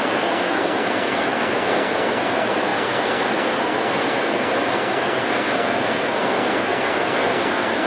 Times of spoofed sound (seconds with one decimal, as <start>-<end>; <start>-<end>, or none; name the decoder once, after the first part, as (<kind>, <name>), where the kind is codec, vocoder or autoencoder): 0.0-7.9 (codec, SNAC)